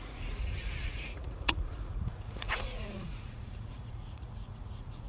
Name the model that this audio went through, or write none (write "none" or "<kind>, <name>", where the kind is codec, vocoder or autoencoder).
vocoder, Vocos